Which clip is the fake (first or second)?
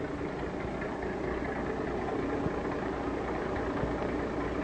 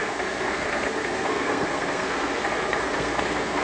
second